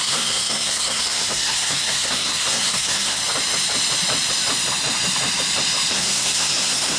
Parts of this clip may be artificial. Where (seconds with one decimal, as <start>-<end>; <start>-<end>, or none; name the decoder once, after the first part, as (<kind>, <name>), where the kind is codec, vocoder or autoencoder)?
0.0-3.2 (codec, SNAC); 5.9-7.0

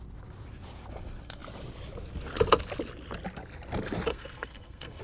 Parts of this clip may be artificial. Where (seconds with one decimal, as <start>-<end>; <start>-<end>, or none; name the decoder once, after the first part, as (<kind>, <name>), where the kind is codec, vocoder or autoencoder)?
4.1-5.0 (codec, SNAC)

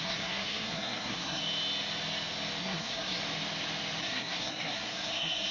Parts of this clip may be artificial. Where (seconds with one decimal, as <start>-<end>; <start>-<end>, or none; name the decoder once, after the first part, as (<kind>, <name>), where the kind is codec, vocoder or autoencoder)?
0.0-1.4 (codec, SNAC); 2.6-3.2; 4.0-5.5

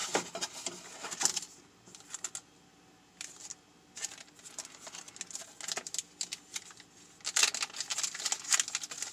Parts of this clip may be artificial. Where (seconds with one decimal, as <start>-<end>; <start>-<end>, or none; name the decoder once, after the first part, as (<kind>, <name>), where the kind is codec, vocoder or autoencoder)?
none

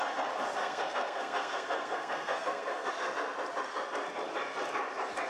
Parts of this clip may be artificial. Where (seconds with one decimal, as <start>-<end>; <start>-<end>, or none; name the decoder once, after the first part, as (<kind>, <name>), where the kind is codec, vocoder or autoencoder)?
0.6-2.9 (codec, SNAC)

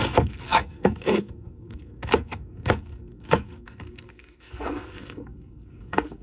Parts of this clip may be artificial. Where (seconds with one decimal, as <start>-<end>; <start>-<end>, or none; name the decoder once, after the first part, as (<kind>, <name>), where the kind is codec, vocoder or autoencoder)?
0.0-6.2 (codec, SNAC)